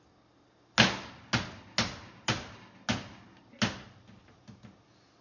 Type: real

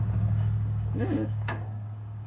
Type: fake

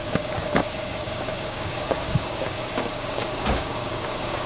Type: fake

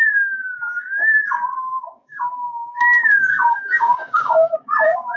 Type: fake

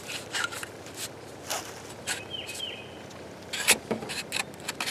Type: real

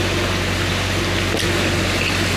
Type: real